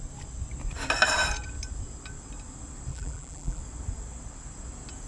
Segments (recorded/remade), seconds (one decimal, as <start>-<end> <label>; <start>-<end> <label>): 0.0-2.9 recorded; 2.9-3.6 remade; 3.6-5.1 recorded